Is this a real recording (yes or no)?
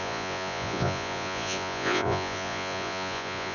no